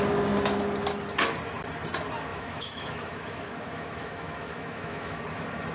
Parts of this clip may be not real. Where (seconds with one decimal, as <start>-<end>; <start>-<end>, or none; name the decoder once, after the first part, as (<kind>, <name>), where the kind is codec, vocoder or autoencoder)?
2.3-5.2 (autoencoder, DAC-VAE)